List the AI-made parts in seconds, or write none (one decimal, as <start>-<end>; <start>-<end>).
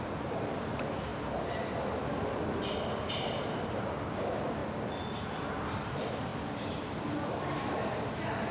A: 0.0-1.1; 3.1-4.6; 5.4-8.5